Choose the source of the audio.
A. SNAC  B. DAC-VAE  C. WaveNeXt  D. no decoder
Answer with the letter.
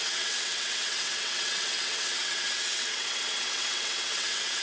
C